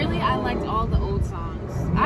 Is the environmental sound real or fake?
real